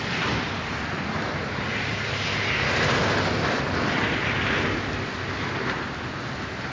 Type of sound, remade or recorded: recorded